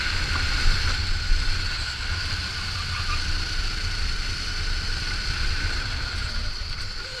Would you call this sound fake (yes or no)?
no